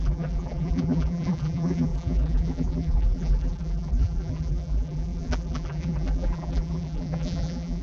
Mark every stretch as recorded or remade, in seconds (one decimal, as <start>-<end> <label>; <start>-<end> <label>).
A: 0.0-7.8 remade